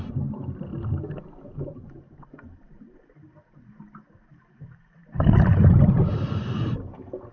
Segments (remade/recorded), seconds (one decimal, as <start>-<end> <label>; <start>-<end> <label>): 0.0-1.5 recorded; 1.5-2.3 remade; 2.3-5.0 recorded; 5.0-5.8 remade; 5.8-7.3 recorded